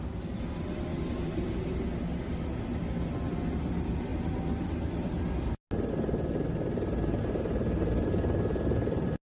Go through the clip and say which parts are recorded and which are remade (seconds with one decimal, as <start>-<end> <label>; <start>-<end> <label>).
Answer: 0.0-9.2 recorded